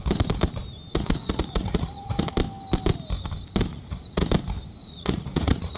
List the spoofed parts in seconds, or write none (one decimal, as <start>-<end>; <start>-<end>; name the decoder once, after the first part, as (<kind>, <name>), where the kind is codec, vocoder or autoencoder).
0.9-2.2 (vocoder, Vocos); 3.7-4.3; 4.8-5.8